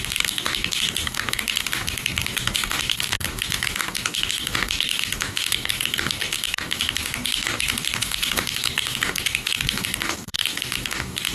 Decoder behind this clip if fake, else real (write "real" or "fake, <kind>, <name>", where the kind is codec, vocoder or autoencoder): fake, codec, DAC